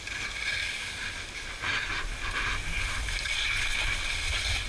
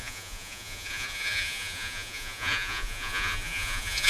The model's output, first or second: second